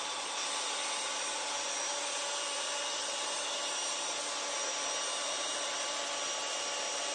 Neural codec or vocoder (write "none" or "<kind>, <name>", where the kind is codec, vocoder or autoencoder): none